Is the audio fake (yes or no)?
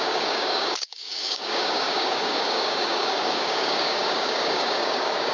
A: yes